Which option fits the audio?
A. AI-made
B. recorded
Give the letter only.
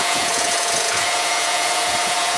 A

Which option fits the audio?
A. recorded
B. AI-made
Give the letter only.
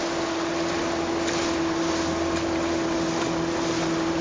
A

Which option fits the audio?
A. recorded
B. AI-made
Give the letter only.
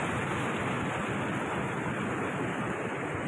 A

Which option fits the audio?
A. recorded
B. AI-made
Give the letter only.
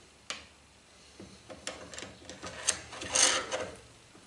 A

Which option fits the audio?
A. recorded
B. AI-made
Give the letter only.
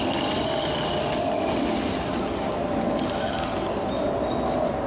A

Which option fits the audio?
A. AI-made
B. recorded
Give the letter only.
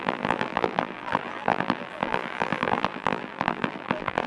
A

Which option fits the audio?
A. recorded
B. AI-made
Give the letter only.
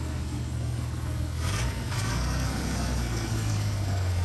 B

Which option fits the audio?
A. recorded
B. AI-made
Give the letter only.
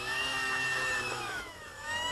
B